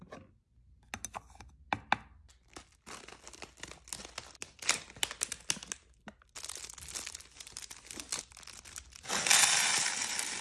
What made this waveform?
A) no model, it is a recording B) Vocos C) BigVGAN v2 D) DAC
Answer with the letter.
A